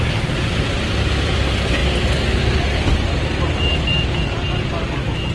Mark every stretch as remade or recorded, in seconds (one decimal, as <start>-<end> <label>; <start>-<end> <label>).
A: 0.0-1.8 remade; 1.8-5.3 recorded